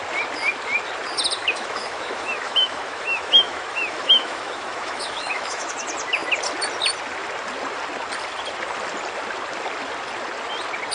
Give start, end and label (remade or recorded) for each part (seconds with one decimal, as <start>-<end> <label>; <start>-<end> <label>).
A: 0.0-1.4 recorded; 1.4-5.7 remade; 5.7-10.9 recorded